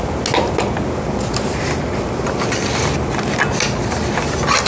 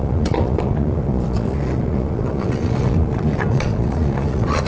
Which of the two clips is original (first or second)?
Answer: first